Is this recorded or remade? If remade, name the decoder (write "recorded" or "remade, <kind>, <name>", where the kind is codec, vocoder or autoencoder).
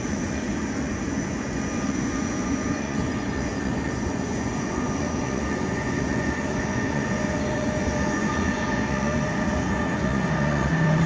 remade, vocoder, Vocos